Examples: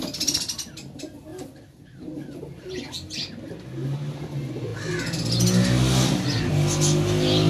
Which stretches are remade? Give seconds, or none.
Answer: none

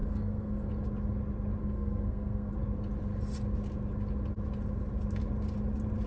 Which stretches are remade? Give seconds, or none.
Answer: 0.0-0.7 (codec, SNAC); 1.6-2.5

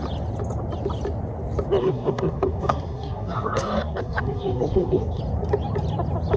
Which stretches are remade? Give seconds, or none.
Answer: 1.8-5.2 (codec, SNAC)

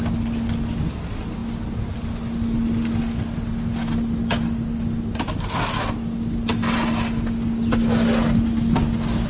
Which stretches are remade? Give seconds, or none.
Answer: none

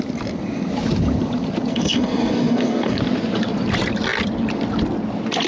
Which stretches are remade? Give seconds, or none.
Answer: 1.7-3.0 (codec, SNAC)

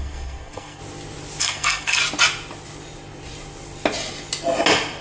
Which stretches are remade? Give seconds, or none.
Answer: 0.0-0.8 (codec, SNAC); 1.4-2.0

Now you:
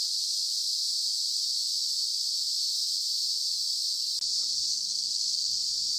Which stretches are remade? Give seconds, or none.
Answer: 4.7-5.6 (codec, SNAC)